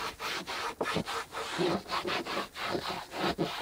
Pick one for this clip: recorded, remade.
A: recorded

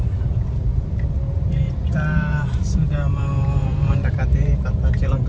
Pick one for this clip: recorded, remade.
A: remade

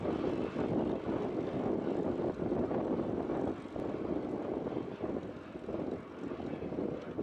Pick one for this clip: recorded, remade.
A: recorded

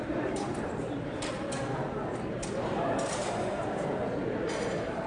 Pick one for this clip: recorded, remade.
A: remade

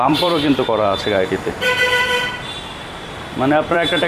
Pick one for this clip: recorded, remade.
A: remade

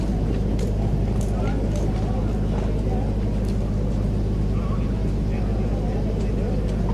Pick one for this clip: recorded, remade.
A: recorded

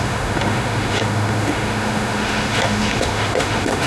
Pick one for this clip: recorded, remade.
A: remade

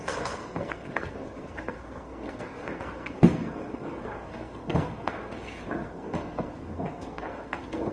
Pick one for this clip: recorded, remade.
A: remade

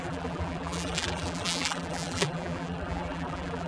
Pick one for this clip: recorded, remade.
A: remade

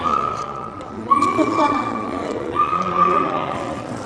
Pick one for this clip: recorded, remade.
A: remade